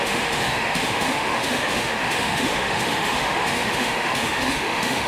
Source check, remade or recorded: remade